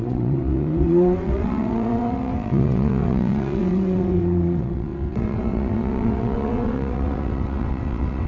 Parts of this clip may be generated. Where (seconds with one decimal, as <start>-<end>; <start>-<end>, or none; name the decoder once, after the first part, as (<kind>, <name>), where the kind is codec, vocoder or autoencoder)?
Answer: 0.0-8.3 (vocoder, WaveNeXt)